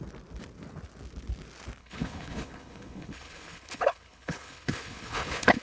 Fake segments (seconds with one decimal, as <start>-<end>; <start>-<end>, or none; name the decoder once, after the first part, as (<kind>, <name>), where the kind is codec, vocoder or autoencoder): 1.8-5.6 (codec, HILCodec)